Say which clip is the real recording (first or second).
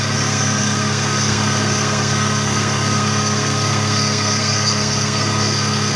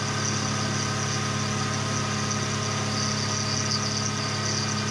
second